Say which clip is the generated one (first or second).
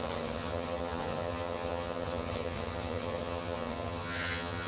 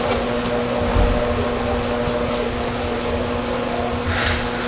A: first